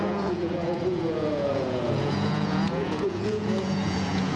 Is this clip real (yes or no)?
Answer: no